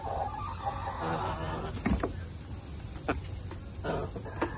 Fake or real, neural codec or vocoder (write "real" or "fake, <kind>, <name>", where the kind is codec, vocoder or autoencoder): real